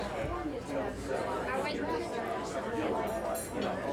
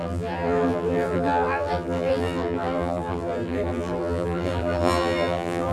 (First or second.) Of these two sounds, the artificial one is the second